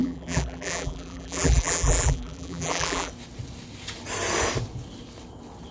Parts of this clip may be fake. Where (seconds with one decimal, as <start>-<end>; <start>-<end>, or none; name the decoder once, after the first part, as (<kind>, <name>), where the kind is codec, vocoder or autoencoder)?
0.0-3.1 (vocoder, BigVGAN v2)